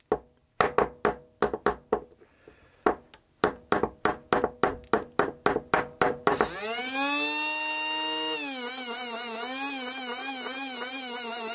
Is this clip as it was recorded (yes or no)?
yes